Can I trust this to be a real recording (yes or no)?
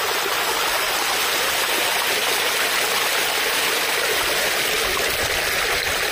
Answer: yes